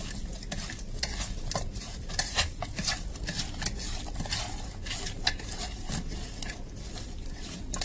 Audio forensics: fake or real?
real